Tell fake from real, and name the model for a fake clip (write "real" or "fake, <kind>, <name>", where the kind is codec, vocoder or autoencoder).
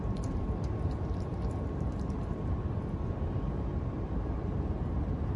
fake, vocoder, BigVGAN v2